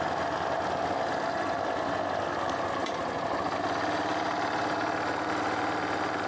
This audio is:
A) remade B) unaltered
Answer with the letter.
B